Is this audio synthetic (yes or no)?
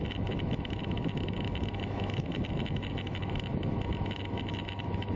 yes